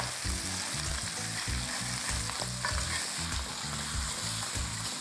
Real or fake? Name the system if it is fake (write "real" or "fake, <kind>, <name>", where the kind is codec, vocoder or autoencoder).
real